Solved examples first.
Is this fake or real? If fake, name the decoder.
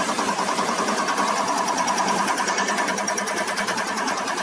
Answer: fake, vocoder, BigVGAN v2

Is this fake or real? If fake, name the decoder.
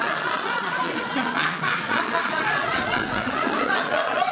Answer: fake, vocoder, Vocos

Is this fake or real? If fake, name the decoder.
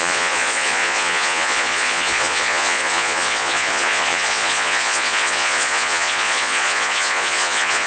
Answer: fake, vocoder, Vocos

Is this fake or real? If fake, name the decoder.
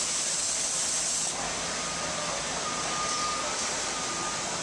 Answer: real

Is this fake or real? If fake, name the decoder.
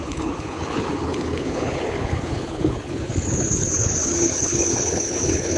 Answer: fake, codec, HILCodec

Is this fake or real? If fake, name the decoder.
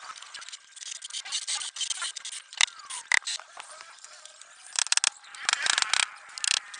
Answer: real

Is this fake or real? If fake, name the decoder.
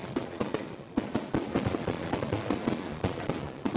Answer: fake, vocoder, Vocos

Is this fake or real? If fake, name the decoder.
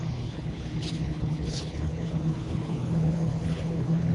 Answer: fake, codec, HILCodec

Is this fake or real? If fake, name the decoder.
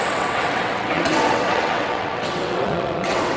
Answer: fake, vocoder, WaveNeXt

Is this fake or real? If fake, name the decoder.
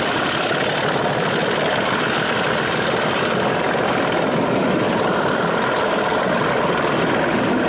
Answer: real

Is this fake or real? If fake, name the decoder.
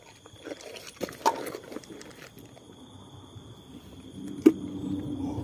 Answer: real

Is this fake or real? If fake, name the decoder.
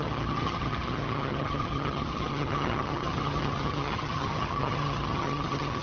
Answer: fake, vocoder, HiFi-GAN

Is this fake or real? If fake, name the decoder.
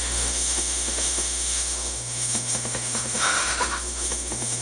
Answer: fake, autoencoder, DAC-VAE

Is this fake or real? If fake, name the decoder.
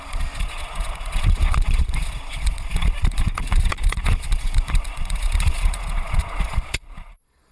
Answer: fake, vocoder, Vocos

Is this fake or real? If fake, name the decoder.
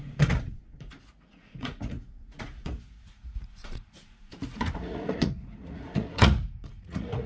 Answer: fake, vocoder, Vocos